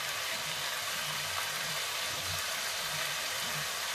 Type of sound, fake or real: fake